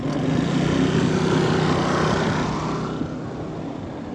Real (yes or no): yes